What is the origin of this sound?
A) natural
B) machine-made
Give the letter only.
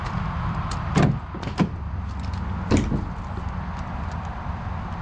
A